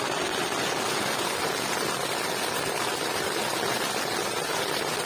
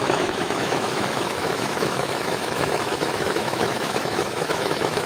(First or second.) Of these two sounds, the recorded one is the first